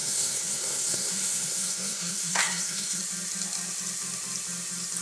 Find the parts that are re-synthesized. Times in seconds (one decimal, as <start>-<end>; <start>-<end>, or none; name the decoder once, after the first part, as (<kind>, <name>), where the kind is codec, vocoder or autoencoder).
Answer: 0.0-3.0 (codec, SNAC)